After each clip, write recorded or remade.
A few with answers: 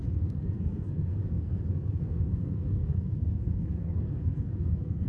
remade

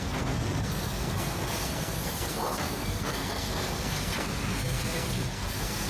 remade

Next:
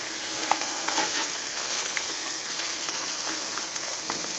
remade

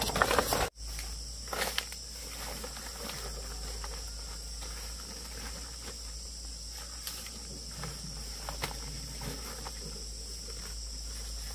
recorded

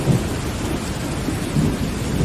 recorded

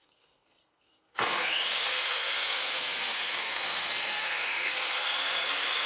remade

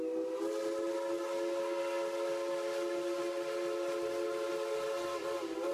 recorded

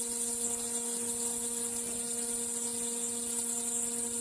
recorded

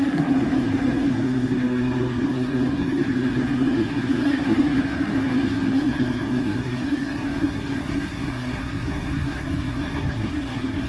remade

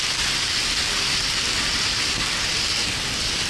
recorded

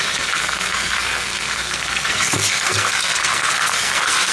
remade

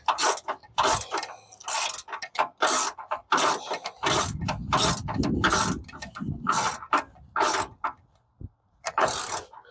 recorded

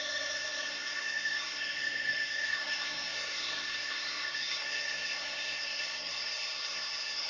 remade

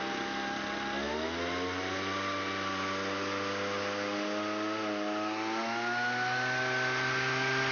recorded